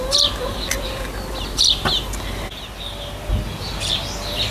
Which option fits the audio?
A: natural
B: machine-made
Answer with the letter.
A